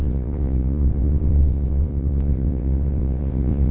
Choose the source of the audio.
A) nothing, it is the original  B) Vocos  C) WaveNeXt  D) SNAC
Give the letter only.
C